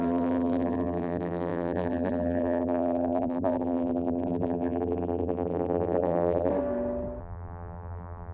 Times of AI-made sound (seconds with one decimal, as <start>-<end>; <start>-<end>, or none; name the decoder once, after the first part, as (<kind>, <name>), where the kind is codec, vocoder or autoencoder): 0.0-6.5 (vocoder, BigVGAN v2); 7.2-8.3